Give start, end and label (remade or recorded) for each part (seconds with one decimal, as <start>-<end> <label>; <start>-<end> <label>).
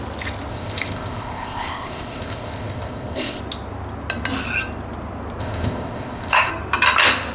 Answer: 0.0-0.5 recorded; 0.5-3.4 remade; 3.4-5.4 recorded; 5.4-6.5 remade; 6.5-7.3 recorded